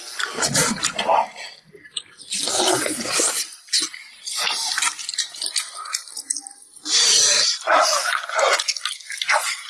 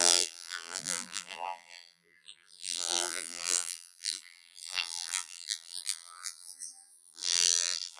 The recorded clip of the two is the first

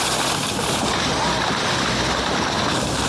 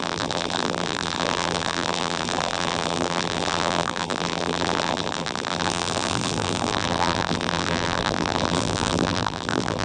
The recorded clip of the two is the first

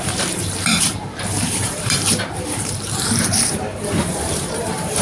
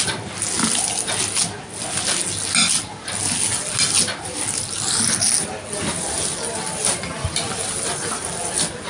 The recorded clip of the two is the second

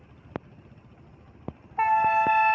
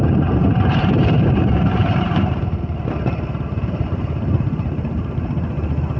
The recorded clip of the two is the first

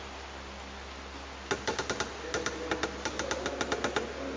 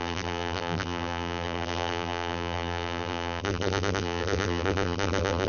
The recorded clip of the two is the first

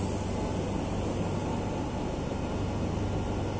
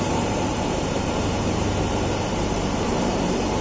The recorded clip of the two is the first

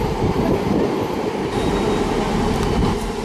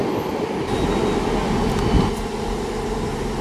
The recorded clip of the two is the second